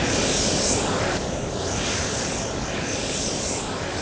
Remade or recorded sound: remade